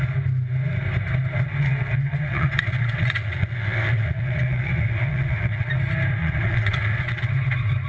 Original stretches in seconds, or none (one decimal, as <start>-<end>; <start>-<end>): 0.0-1.6; 5.7-6.2; 7.3-7.9